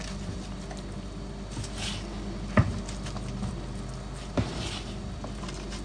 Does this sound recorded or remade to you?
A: recorded